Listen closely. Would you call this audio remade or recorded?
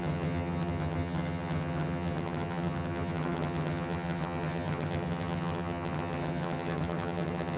remade